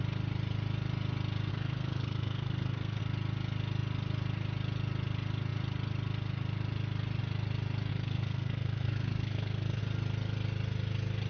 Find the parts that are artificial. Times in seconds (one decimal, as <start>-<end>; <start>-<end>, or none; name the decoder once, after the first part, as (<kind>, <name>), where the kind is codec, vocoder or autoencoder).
1.5-3.0 (codec, SNAC); 7.9-9.8